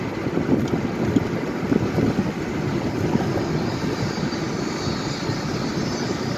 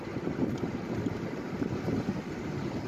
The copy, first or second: second